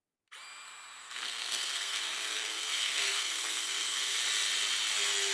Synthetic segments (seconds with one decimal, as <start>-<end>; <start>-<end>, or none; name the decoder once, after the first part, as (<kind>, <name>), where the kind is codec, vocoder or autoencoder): 1.0-4.2 (codec, SNAC)